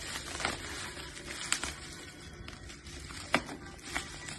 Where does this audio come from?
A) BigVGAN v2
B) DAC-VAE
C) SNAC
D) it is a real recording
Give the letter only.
D